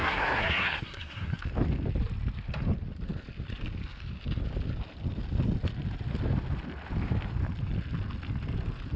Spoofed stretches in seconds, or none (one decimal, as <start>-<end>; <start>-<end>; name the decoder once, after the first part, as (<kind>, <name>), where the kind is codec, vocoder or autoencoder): 0.0-1.4 (codec, SNAC)

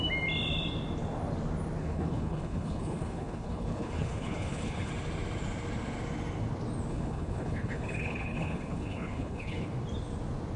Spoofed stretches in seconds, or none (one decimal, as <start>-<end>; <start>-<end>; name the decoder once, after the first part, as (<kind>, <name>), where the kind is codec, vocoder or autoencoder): 1.8-4.9 (codec, HILCodec); 6.9-9.7